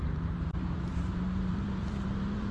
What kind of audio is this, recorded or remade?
remade